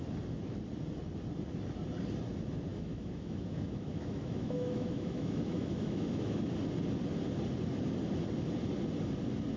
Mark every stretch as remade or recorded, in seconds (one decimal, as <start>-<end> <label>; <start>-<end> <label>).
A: 0.0-2.7 recorded; 2.7-6.4 remade; 6.4-9.6 recorded